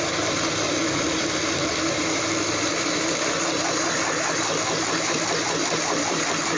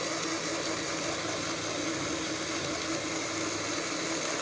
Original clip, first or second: second